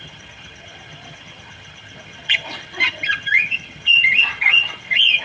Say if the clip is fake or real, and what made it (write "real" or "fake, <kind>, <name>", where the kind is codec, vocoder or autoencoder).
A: fake, vocoder, HiFi-GAN